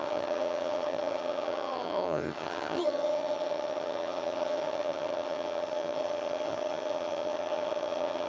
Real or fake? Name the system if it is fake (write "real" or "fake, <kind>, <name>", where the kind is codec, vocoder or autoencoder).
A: fake, vocoder, HiFi-GAN